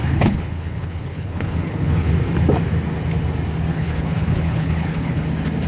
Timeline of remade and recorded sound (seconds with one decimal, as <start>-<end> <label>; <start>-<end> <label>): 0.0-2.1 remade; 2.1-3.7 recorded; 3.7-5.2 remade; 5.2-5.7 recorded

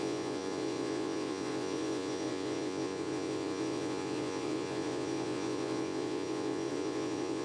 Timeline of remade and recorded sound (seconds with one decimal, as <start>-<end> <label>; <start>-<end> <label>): 0.0-7.4 remade

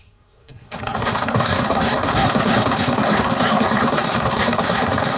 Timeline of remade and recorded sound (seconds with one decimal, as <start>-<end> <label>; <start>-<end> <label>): 0.0-5.2 remade

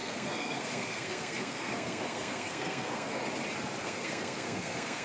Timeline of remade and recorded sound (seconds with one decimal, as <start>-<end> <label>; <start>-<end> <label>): 0.0-3.2 remade; 3.2-3.8 recorded; 3.8-5.0 remade

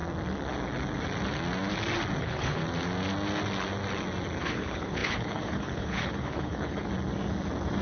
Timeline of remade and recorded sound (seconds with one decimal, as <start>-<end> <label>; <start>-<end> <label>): 0.0-2.2 recorded; 2.2-2.6 remade; 2.6-4.4 recorded; 4.4-6.9 remade; 6.9-7.8 recorded

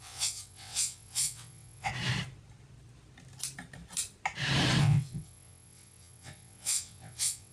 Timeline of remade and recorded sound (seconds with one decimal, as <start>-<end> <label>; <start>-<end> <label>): 0.0-1.9 remade; 1.9-4.8 recorded; 4.8-7.5 remade